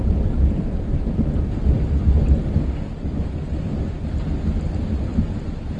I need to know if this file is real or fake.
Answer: real